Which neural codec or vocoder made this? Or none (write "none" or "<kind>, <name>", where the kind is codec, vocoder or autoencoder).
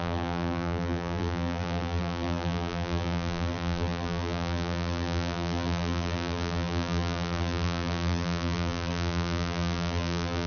vocoder, BigVGAN v2